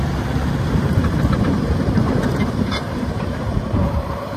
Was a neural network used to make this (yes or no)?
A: yes